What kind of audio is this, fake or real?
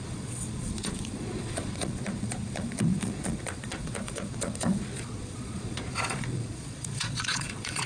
fake